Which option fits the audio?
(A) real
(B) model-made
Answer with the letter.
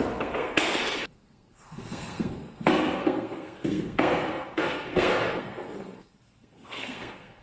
B